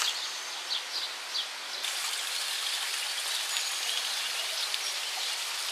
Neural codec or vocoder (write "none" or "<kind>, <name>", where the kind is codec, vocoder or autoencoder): none